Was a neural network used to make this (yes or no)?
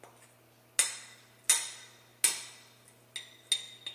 no